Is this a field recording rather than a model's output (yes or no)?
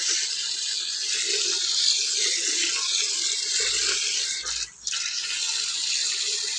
yes